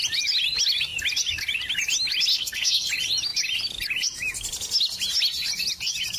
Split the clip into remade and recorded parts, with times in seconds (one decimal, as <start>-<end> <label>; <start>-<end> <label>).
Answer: 0.0-2.3 recorded; 2.3-2.9 remade; 2.9-6.2 recorded